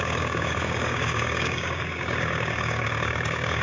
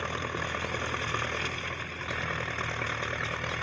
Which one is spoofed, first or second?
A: first